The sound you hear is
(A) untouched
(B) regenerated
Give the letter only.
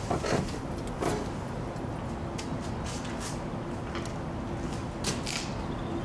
A